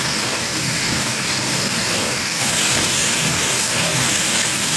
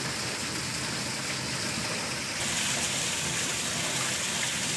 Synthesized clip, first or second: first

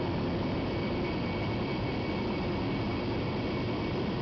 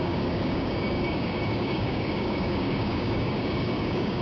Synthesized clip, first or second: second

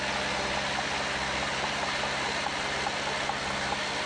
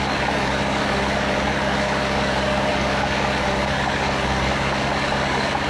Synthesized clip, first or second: second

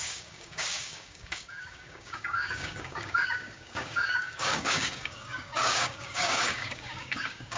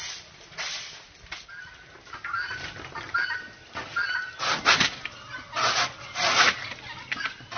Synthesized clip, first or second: first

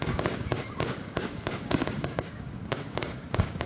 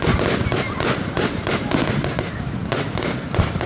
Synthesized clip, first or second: first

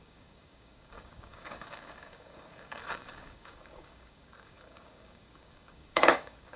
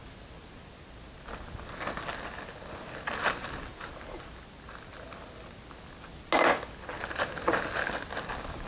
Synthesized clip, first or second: first